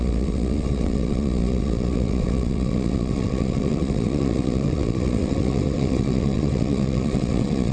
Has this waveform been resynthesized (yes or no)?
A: yes